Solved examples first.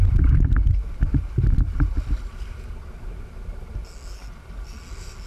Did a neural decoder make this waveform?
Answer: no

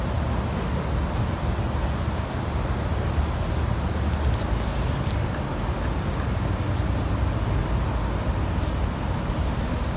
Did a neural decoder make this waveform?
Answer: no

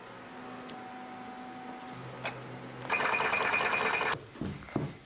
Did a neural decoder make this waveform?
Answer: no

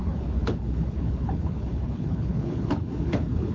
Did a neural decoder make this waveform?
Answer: yes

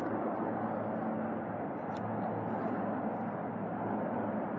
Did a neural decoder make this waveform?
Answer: no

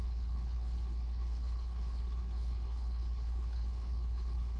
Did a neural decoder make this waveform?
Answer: yes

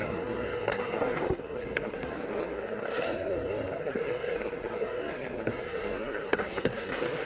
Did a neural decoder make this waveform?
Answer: yes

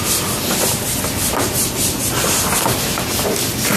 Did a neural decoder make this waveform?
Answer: no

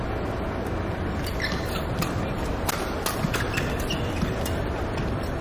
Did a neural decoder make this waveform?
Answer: no